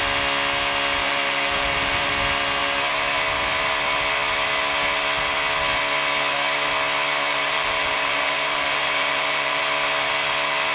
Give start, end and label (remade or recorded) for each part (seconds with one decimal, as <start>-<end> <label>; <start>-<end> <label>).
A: 0.0-1.0 recorded; 1.0-2.1 remade; 2.1-7.3 recorded; 7.3-9.6 remade; 9.6-10.7 recorded